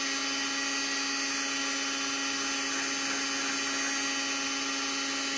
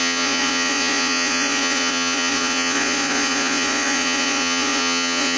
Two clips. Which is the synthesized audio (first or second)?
second